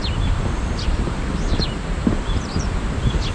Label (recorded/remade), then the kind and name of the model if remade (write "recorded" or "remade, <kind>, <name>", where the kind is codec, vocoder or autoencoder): remade, vocoder, BigVGAN v2